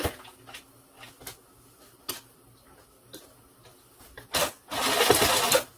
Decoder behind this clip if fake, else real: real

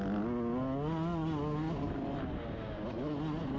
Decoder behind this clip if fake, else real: real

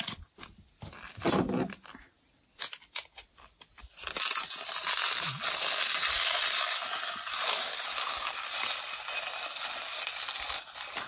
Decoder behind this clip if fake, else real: real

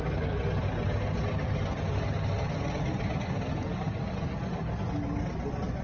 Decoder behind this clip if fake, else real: real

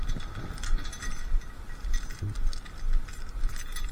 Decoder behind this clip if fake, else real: real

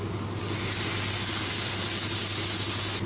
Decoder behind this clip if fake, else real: real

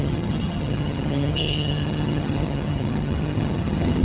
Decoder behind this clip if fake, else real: fake, vocoder, HiFi-GAN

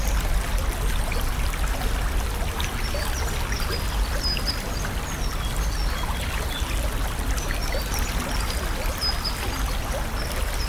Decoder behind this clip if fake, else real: real